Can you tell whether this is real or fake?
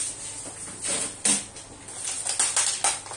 real